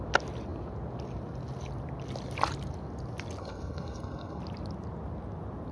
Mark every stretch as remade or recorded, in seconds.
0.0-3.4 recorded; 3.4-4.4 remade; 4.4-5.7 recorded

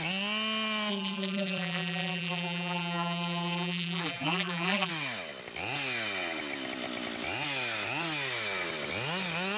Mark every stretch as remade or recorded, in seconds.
0.0-0.9 recorded; 0.9-4.9 remade; 4.9-9.6 recorded

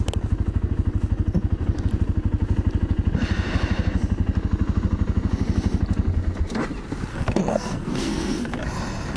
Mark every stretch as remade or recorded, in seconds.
0.0-7.1 recorded; 7.1-8.6 remade; 8.6-9.2 recorded

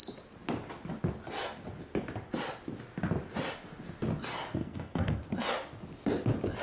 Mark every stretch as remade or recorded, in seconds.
0.0-4.6 recorded; 4.6-5.2 remade; 5.2-6.6 recorded

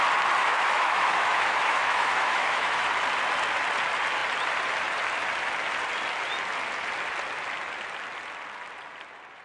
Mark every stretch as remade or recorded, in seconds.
0.0-0.4 recorded; 0.4-2.9 remade; 2.9-9.4 recorded